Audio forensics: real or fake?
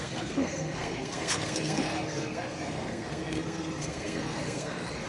fake